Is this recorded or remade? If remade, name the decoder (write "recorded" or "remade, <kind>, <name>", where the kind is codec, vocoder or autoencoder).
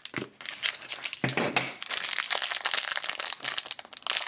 recorded